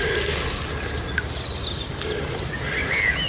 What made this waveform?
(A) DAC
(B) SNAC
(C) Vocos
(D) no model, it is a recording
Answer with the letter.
D